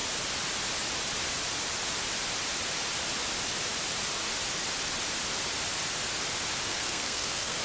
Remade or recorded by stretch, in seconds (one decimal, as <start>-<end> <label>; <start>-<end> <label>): 0.0-6.7 recorded; 6.7-7.6 remade